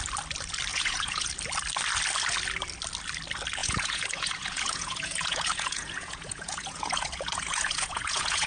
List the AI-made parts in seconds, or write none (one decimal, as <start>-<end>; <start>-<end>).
0.7-1.3; 3.6-8.5